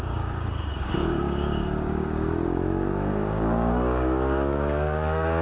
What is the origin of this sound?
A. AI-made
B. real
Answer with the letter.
A